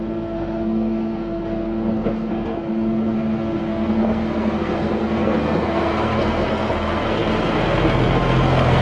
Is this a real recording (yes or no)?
no